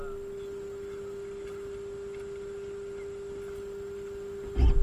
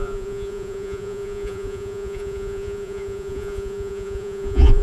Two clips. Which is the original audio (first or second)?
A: first